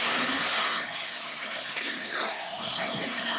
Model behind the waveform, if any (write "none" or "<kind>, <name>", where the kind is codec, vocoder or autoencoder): codec, SNAC